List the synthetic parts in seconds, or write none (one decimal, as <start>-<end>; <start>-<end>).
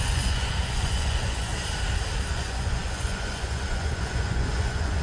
0.0-1.5; 2.3-5.0